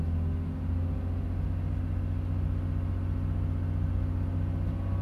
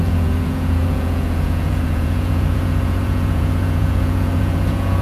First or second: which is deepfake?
second